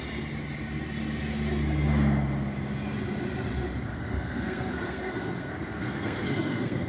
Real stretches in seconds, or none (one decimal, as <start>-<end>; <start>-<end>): 0.0-3.9